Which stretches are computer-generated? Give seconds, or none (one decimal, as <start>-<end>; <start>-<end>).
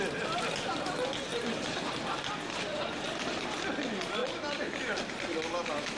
1.3-3.7; 4.2-4.8